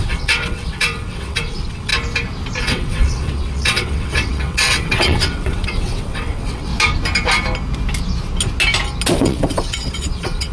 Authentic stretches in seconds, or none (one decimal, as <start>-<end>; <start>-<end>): 1.9-2.6; 6.7-9.1